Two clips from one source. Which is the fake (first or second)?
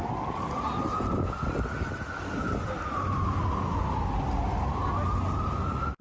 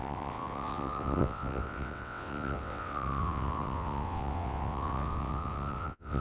second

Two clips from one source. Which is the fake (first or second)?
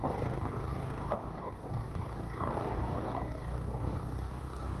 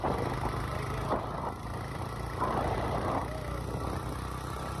first